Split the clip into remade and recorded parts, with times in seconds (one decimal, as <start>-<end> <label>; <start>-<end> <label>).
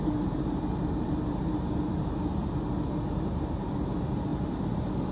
0.0-2.3 remade; 2.3-3.1 recorded; 3.1-4.3 remade; 4.3-5.1 recorded